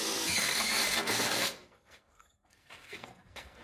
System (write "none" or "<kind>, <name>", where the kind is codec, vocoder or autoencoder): codec, SNAC